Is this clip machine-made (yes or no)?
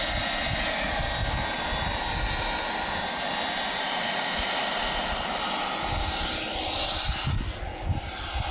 no